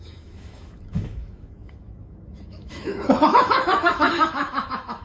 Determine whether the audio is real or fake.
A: fake